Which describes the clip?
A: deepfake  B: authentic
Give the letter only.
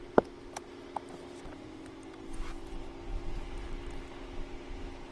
B